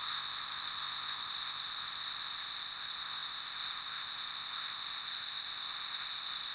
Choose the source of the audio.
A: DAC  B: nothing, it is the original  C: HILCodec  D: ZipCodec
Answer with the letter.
D